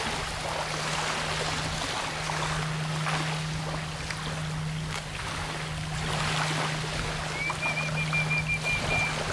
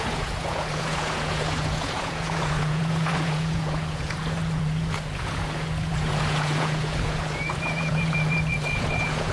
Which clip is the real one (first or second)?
first